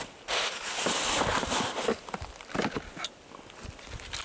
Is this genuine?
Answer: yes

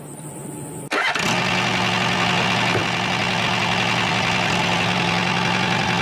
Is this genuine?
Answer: yes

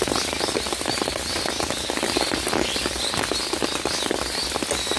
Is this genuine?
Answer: yes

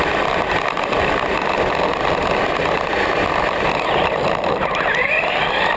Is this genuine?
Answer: yes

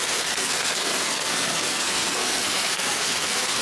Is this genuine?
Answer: no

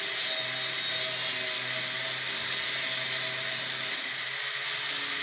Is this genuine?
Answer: yes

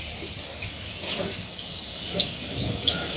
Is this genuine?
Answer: no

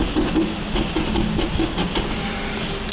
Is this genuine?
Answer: yes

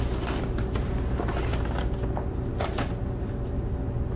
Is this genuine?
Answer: yes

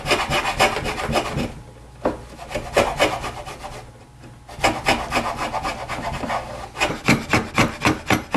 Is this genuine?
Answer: yes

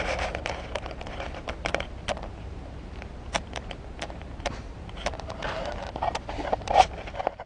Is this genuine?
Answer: no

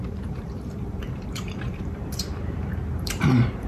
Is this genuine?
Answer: no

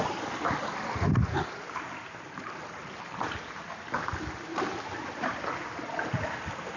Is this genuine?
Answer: yes